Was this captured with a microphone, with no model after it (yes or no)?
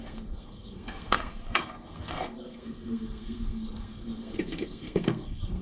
no